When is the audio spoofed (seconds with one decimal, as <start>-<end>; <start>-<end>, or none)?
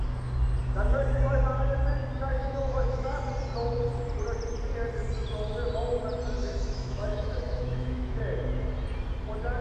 2.3-3.3; 6.4-8.2